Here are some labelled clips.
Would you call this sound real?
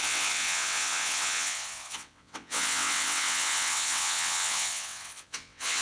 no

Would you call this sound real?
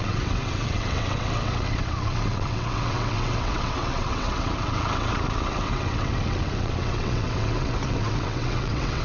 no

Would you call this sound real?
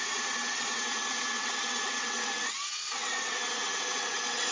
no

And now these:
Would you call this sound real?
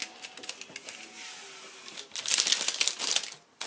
yes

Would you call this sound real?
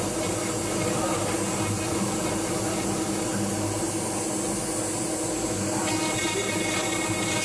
yes